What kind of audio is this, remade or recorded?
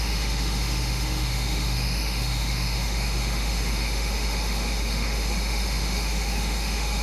remade